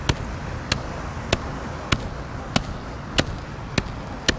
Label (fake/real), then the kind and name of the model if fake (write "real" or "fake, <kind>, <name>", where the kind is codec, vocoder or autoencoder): real